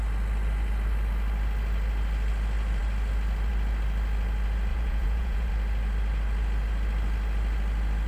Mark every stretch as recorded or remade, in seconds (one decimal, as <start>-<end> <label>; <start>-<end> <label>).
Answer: 0.0-4.7 recorded; 4.7-5.5 remade; 5.5-8.1 recorded

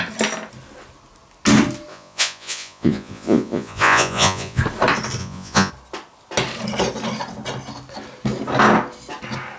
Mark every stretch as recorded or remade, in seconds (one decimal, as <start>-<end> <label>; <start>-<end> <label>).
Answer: 0.0-1.9 recorded; 1.9-4.6 remade; 4.6-5.2 recorded; 5.2-5.7 remade; 5.7-9.6 recorded

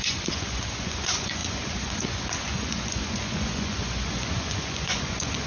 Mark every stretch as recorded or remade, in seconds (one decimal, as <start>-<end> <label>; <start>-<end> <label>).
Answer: 0.0-5.5 remade

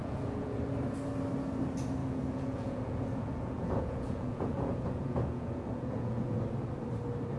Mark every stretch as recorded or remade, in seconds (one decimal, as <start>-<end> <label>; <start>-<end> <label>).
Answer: 0.0-0.6 remade; 0.6-2.0 recorded; 2.0-6.4 remade; 6.4-7.4 recorded